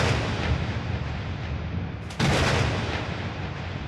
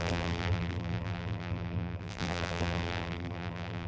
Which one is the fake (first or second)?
second